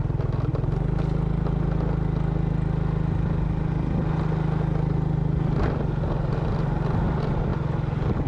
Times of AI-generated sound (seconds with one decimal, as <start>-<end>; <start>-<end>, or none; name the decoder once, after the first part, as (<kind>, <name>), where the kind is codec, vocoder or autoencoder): none